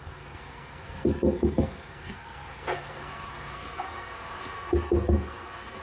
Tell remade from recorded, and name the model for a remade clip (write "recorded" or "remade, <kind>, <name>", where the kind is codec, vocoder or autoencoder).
remade, codec, SNAC